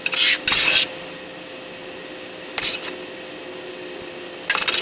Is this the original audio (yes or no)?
yes